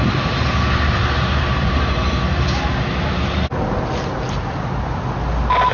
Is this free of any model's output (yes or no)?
yes